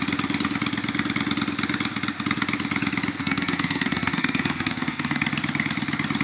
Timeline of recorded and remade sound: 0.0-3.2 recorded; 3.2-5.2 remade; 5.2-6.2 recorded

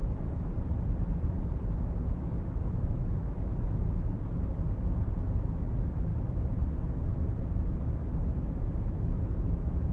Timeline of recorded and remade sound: 0.0-0.5 remade; 0.5-1.7 recorded; 1.7-4.1 remade; 4.1-5.2 recorded; 5.2-6.1 remade; 6.1-7.8 recorded; 7.8-9.9 remade

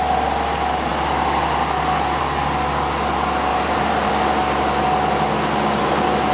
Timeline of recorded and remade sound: 0.0-3.5 recorded; 3.5-4.1 remade; 4.1-6.3 recorded

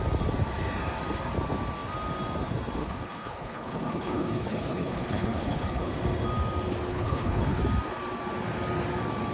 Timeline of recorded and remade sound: 0.0-2.8 recorded; 2.8-5.9 remade; 5.9-6.9 recorded; 6.9-7.6 remade; 7.6-9.3 recorded

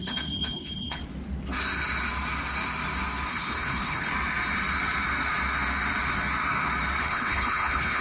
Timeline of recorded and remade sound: 0.0-1.0 remade; 1.0-3.3 recorded; 3.3-4.1 remade; 4.1-7.0 recorded; 7.0-8.0 remade

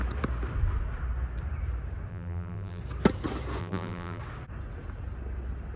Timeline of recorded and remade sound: 0.0-2.1 recorded; 2.1-2.8 remade; 2.8-3.6 recorded; 3.6-4.2 remade; 4.2-5.8 recorded

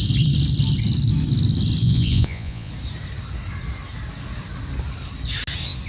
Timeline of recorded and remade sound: 0.0-1.8 recorded; 1.8-2.7 remade; 2.7-5.9 recorded